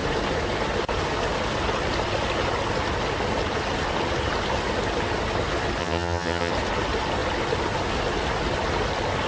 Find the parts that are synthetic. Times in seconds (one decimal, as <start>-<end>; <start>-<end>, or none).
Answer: 5.8-6.5